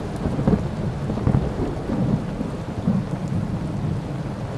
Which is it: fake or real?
real